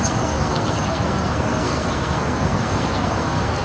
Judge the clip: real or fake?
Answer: fake